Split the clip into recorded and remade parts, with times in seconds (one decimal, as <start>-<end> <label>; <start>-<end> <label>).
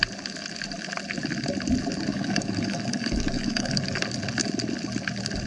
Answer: 0.0-2.1 recorded; 2.1-4.0 remade; 4.0-5.5 recorded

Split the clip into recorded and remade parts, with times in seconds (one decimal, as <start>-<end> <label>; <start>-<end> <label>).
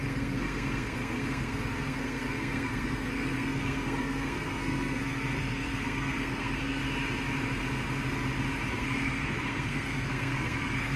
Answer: 0.0-6.8 remade; 6.8-8.7 recorded; 8.7-11.0 remade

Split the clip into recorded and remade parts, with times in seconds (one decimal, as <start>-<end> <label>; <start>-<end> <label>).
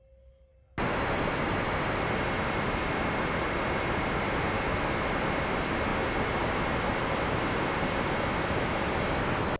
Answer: 0.0-9.6 recorded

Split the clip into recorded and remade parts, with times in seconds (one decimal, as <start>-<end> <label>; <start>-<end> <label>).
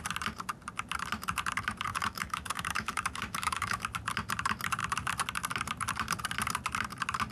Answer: 0.0-1.9 recorded; 1.9-3.8 remade; 3.8-7.3 recorded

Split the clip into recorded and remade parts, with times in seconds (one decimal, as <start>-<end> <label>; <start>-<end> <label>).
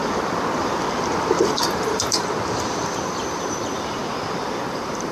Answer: 0.0-1.4 recorded; 1.4-2.2 remade; 2.2-2.9 recorded; 2.9-4.0 remade; 4.0-4.6 recorded; 4.6-5.1 remade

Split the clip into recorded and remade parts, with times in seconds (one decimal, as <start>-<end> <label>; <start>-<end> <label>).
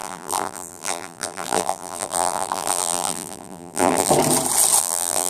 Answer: 0.0-4.1 remade; 4.1-4.8 recorded; 4.8-5.3 remade